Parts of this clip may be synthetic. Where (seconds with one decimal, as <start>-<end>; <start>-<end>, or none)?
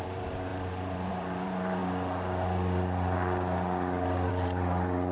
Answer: 0.0-1.8; 4.3-5.1